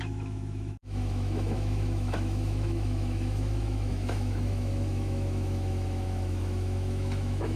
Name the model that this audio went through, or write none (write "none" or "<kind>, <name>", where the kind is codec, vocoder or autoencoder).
autoencoder, DAC-VAE